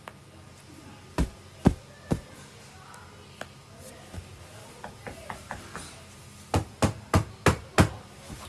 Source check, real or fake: real